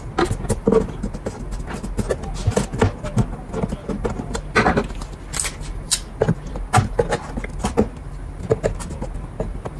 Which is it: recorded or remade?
recorded